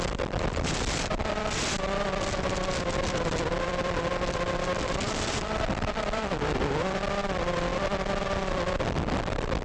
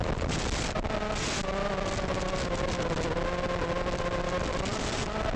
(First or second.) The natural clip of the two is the second